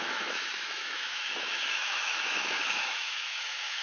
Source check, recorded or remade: remade